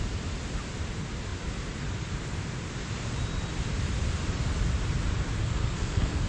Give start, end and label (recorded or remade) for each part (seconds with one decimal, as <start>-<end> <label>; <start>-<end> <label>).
0.0-5.4 recorded; 5.4-6.3 remade